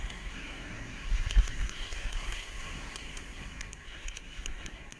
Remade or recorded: remade